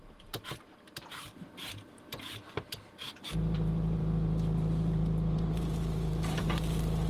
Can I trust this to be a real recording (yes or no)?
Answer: no